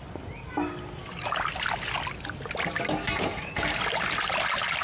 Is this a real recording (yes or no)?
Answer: yes